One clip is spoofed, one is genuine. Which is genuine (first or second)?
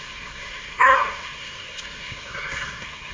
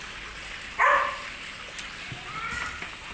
second